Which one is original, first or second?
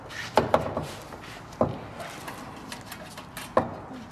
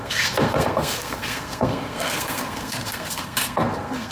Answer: first